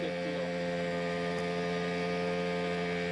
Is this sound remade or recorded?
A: recorded